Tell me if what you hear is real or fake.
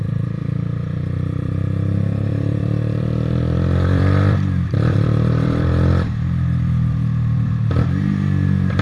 fake